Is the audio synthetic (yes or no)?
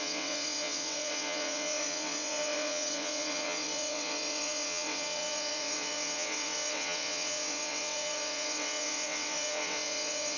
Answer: yes